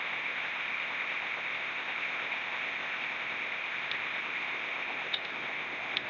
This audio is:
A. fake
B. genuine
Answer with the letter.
A